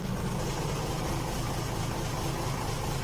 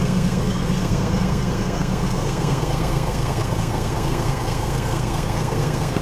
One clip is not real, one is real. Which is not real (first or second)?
second